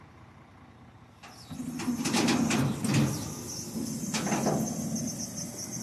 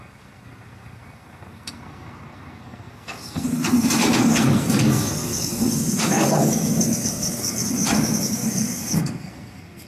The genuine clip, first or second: first